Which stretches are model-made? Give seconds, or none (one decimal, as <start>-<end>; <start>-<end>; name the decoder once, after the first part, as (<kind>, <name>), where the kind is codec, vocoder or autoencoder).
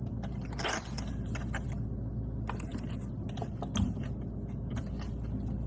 none